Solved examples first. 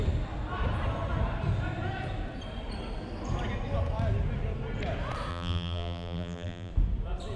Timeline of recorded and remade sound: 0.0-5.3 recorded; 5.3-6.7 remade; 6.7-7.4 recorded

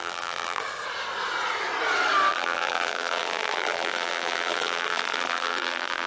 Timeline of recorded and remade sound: 0.0-0.6 remade; 0.6-2.3 recorded; 2.3-6.1 remade

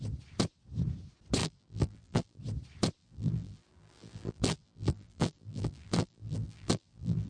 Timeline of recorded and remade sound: 0.0-1.4 recorded; 1.4-2.4 remade; 2.4-3.0 recorded; 3.0-7.3 remade

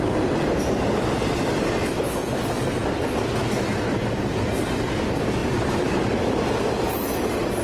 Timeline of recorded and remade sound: 0.0-7.6 recorded